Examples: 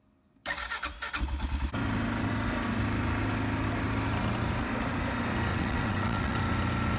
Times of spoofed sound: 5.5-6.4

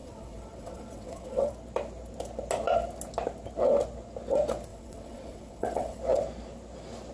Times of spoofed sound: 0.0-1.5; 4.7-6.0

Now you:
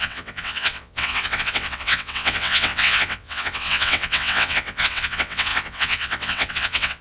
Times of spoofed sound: 0.0-7.0

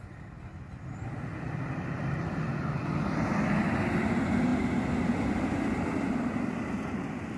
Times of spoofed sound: none

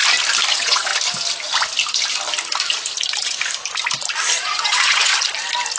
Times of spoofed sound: 0.5-0.9; 4.4-5.1

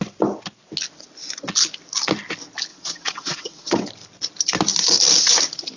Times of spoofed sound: 2.7-3.9